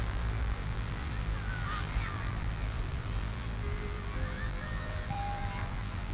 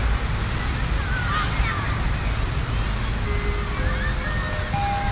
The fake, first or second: first